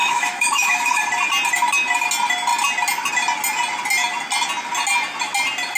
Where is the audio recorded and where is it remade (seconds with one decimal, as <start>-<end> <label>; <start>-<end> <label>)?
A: 0.0-1.0 remade; 1.0-5.8 recorded